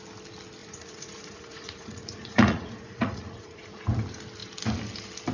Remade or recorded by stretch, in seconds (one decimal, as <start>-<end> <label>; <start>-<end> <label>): 0.0-0.6 recorded; 0.6-3.8 remade; 3.8-5.3 recorded